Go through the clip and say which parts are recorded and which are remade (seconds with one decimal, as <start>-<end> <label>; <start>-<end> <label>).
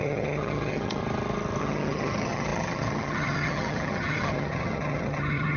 0.0-1.0 remade; 1.0-1.6 recorded; 1.6-5.6 remade